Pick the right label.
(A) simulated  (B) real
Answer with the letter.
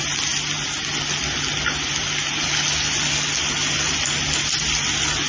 B